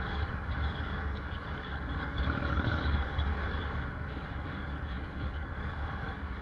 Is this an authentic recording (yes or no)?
no